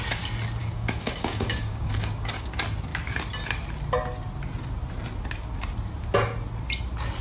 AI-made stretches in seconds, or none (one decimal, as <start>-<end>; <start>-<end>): 0.6-2.5